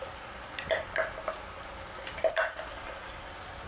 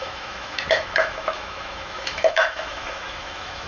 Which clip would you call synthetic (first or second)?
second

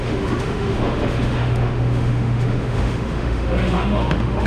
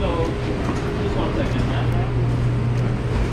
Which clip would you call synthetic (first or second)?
first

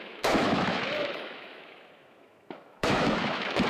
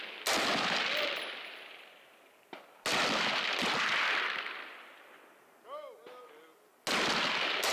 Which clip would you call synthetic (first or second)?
first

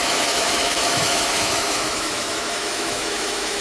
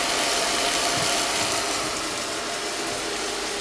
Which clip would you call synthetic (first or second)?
first